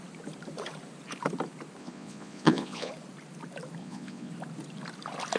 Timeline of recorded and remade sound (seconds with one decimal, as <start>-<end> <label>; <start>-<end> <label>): 0.0-1.8 recorded; 1.8-2.9 remade; 2.9-3.8 recorded; 3.8-4.3 remade; 4.3-5.4 recorded